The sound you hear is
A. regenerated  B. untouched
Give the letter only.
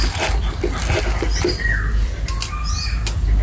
B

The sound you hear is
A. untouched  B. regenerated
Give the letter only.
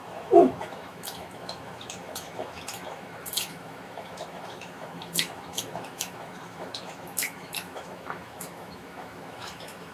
B